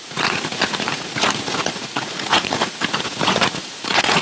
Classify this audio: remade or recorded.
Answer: remade